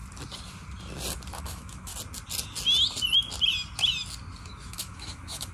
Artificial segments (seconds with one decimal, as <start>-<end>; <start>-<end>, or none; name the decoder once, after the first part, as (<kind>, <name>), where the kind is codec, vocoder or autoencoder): 1.4-1.9 (autoencoder, DAC-VAE); 4.4-5.5